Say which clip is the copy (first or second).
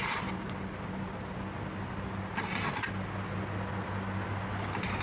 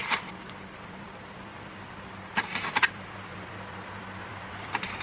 second